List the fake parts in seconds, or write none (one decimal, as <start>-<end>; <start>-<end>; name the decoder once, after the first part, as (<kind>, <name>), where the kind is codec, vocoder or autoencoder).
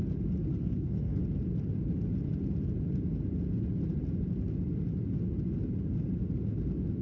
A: 0.5-1.2 (codec, SNAC)